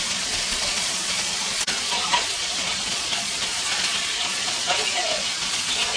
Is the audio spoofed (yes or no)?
yes